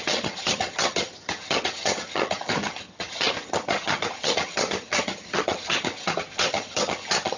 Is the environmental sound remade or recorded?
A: remade